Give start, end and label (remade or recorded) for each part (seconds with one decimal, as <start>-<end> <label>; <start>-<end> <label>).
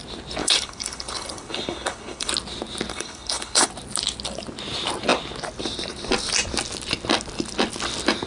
0.0-0.4 recorded; 0.4-2.3 remade; 2.3-2.9 recorded; 2.9-3.7 remade; 3.7-8.3 recorded